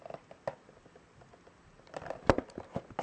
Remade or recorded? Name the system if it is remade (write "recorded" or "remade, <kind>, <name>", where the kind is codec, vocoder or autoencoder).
recorded